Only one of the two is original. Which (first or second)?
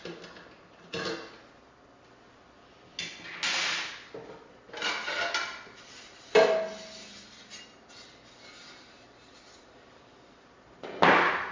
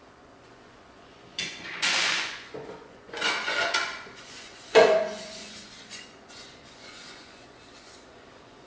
first